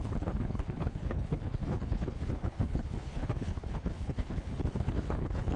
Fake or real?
fake